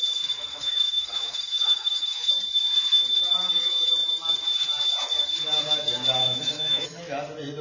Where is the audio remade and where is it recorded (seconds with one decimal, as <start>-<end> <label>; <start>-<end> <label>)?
0.0-0.5 recorded; 0.5-2.3 remade; 2.3-6.2 recorded; 6.2-7.0 remade; 7.0-7.6 recorded